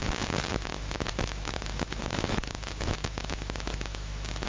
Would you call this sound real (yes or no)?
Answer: no